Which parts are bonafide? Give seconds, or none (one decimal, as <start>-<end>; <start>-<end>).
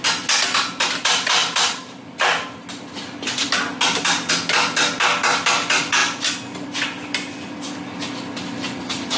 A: 0.0-9.2